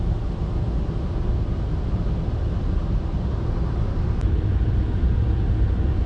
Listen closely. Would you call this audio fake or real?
real